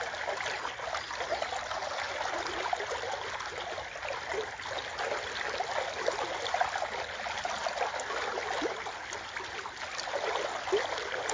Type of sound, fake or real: real